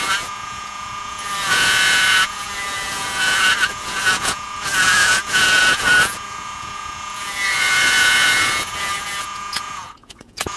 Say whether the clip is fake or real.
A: fake